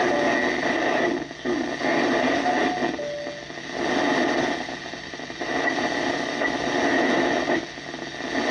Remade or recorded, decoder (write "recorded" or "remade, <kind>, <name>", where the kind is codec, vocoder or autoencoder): recorded